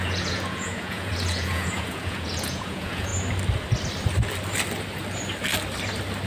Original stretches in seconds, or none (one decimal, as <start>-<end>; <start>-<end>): 3.1-6.3